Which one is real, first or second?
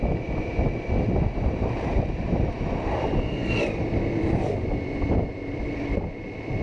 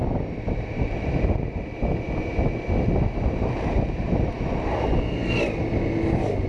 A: second